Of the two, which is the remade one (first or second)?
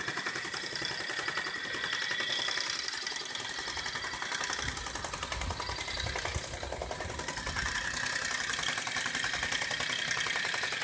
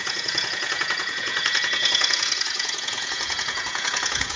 second